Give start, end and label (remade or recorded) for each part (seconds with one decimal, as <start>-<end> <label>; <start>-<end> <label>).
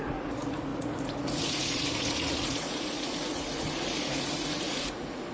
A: 0.0-5.3 remade